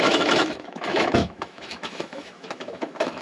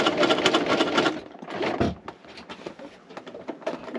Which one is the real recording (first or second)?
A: second